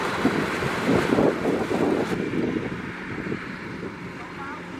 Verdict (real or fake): real